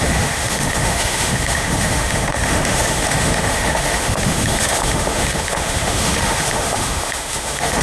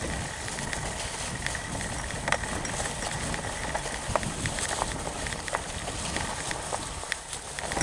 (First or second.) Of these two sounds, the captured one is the second